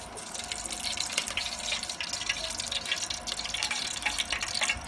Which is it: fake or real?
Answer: real